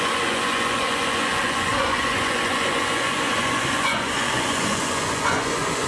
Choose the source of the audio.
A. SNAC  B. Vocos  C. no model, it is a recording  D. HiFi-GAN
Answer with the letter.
B